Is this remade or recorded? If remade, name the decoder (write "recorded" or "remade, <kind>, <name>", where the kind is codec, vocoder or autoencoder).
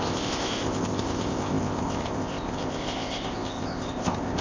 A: remade, codec, ZipCodec